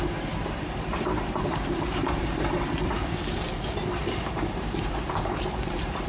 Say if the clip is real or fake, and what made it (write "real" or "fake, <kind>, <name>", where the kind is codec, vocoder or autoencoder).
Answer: fake, vocoder, BigVGAN v2